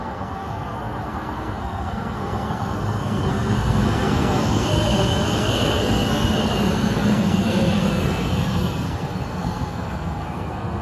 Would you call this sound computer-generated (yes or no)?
yes